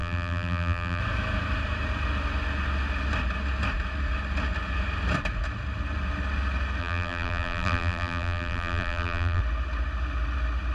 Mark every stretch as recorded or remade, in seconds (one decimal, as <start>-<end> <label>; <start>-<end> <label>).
0.0-1.0 remade; 1.0-6.8 recorded; 6.8-9.4 remade; 9.4-10.7 recorded